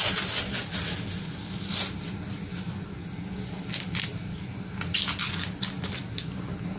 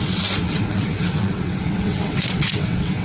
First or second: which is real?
first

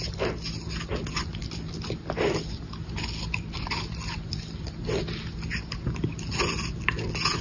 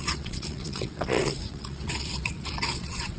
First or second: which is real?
first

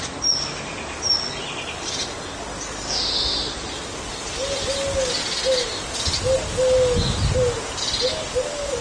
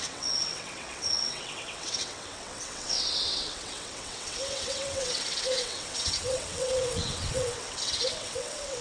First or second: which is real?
first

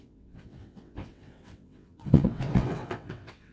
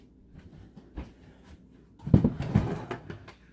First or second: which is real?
second